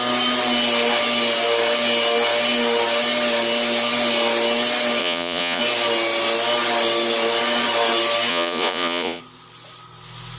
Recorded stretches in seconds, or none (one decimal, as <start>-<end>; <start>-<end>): 0.0-5.0; 5.6-8.3; 9.2-10.4